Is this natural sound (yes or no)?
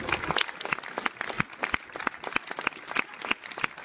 yes